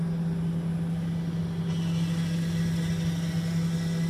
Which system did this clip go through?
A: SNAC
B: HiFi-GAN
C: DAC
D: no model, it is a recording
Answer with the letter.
D